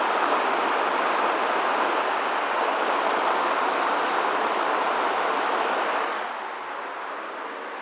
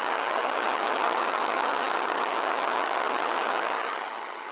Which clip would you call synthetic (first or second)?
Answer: second